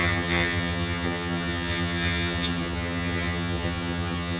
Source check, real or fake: fake